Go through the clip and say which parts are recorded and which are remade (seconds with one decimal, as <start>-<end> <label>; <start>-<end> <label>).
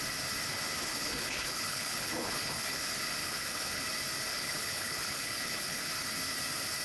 0.0-0.9 recorded; 0.9-2.8 remade; 2.8-3.2 recorded; 3.2-3.8 remade; 3.8-4.3 recorded; 4.3-5.9 remade; 5.9-6.8 recorded